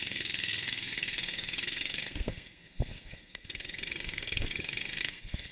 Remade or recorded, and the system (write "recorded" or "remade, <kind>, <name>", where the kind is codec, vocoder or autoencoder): remade, codec, SNAC